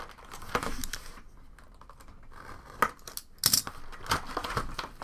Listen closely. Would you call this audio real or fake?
real